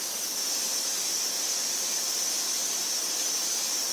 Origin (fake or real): real